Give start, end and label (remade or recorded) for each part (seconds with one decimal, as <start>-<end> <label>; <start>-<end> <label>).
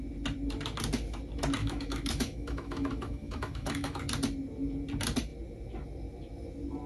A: 0.0-1.6 recorded; 1.6-4.0 remade; 4.0-6.9 recorded